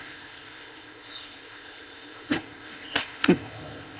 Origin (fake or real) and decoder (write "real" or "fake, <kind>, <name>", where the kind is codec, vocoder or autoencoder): fake, codec, ZipCodec